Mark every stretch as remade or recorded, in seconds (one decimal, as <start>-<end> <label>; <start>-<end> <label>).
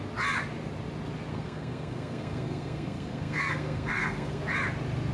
0.0-1.3 recorded; 1.3-4.4 remade; 4.4-5.1 recorded